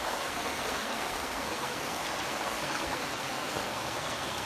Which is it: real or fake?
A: fake